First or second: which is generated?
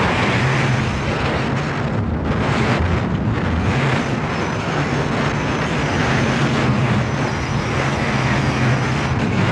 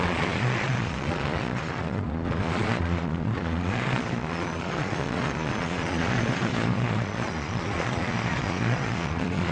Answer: second